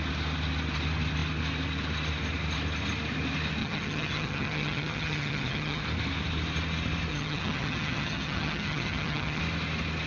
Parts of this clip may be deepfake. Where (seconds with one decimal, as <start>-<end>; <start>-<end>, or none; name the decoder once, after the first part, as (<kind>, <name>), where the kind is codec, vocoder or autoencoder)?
3.6-5.8 (vocoder, HiFi-GAN); 7.1-9.4